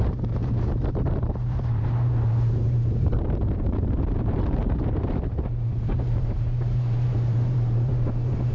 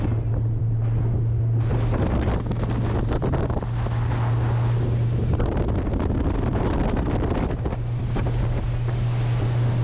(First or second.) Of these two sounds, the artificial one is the first